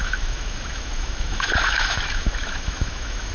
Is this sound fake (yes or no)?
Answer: yes